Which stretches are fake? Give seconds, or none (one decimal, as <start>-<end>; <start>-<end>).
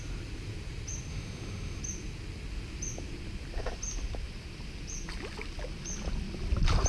1.1-1.8